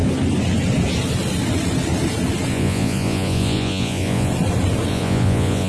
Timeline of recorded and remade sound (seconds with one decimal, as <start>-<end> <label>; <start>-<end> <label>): 0.0-2.5 recorded; 2.5-4.3 remade; 4.3-4.9 recorded; 4.9-5.7 remade